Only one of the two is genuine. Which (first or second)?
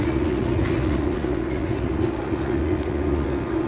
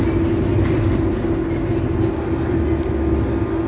second